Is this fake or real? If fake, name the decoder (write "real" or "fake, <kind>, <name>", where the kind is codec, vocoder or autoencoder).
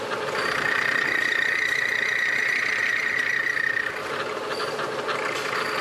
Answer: real